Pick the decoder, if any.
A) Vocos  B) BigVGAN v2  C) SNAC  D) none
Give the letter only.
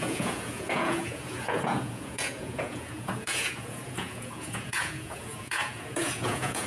A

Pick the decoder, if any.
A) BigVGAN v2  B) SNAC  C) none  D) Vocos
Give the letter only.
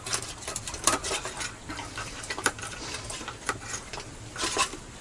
A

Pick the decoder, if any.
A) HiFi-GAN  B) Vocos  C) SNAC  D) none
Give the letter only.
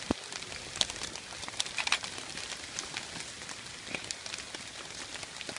D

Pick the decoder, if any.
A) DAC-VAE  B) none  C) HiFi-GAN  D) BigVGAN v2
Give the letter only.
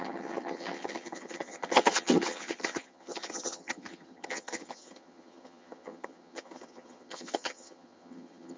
C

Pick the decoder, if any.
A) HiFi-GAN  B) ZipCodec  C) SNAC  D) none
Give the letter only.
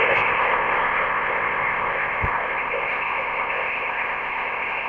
B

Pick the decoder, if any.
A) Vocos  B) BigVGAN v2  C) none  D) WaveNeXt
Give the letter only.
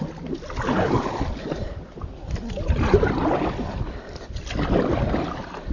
C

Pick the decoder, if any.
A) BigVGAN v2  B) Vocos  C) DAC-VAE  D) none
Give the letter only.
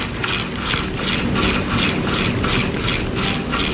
D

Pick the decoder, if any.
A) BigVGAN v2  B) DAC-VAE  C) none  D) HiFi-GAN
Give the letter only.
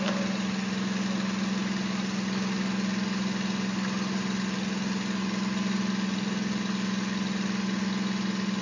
C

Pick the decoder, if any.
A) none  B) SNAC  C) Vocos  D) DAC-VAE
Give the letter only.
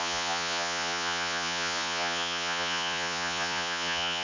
C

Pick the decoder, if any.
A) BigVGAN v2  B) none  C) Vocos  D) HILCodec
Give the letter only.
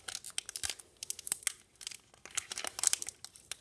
B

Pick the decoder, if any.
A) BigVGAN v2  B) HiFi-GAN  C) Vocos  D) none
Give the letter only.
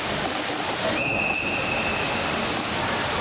D